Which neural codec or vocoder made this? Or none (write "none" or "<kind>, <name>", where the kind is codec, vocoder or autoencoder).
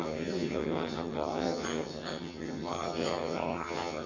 vocoder, HiFi-GAN